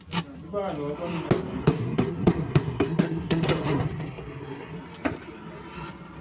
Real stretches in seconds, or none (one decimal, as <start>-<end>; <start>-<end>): 0.0-1.6; 4.7-6.2